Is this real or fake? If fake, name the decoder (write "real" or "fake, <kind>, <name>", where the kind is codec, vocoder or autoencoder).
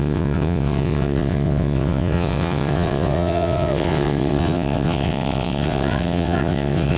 fake, vocoder, WaveNeXt